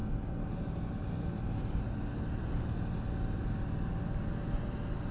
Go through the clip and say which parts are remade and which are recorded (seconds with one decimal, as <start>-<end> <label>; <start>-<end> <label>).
0.0-5.1 recorded